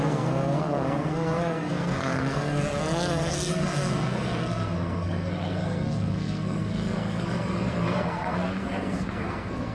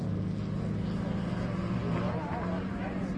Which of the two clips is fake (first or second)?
first